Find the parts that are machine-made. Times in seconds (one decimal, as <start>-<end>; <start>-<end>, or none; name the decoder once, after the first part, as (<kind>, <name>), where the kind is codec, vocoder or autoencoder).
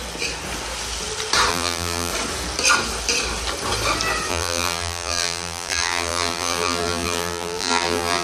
1.5-2.1 (vocoder, BigVGAN v2); 4.3-8.2